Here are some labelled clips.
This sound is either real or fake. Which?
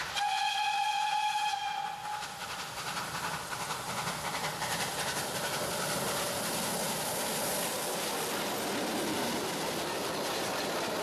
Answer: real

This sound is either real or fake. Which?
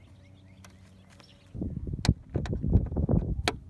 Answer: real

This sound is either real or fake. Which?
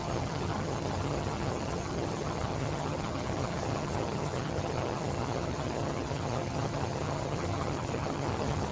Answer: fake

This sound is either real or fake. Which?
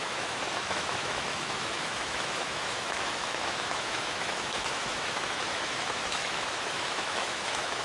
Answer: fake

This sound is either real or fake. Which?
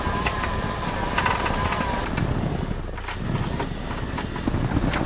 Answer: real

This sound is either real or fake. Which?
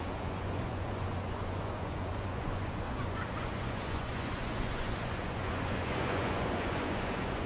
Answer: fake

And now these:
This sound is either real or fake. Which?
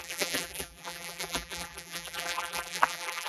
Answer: fake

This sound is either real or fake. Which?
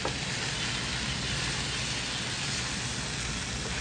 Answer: real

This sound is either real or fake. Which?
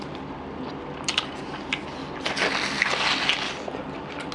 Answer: real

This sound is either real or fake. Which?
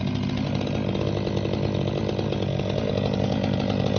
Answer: real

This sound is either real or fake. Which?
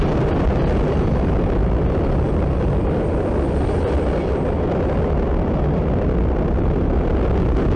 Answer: real